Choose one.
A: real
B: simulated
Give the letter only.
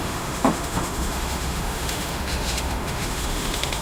B